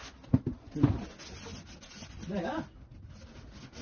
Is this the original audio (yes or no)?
yes